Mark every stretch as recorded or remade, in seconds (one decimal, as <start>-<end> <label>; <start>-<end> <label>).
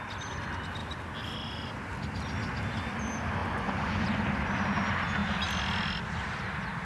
0.0-3.4 recorded; 3.4-4.0 remade; 4.0-6.8 recorded